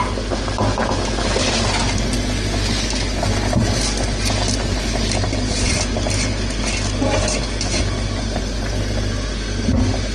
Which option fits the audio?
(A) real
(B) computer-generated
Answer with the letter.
A